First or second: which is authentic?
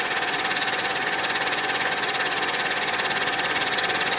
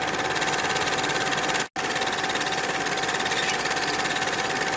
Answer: second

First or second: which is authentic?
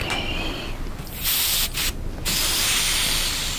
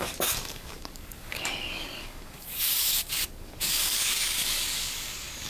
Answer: first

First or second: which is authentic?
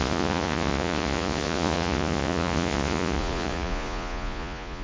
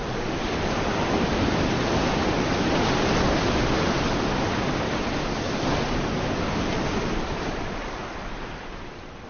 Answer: second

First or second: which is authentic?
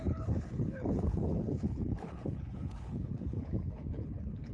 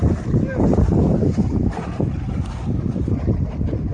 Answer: second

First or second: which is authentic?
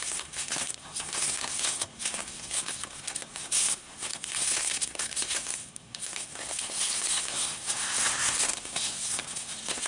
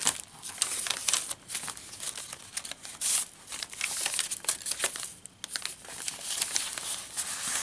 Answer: second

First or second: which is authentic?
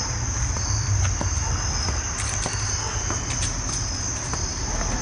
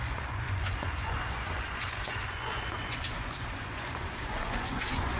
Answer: first